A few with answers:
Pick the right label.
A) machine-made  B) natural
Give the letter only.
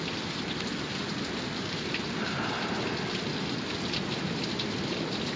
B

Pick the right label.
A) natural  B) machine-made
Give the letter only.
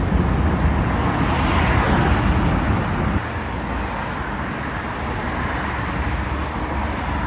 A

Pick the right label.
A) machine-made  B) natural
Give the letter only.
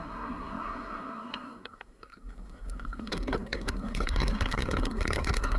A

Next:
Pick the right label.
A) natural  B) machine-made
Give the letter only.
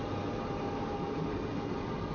A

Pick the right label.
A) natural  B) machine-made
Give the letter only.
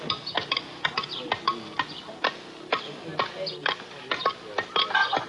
A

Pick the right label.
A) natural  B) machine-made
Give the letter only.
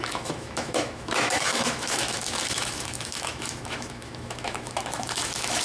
B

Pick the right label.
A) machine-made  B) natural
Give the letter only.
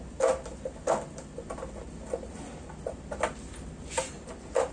B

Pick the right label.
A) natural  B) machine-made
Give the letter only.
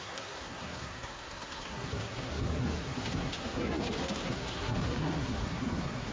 B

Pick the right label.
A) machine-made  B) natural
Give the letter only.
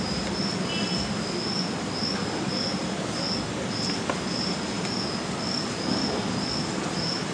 B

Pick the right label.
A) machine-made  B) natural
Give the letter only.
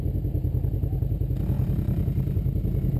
B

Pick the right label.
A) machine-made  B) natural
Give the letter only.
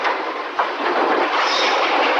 B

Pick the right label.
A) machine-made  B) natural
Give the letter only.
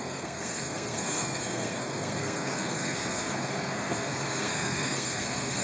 A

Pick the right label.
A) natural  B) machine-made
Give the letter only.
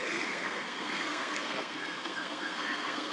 B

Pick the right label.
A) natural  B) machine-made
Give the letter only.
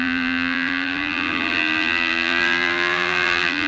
B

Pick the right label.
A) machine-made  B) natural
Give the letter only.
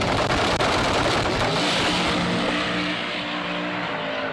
B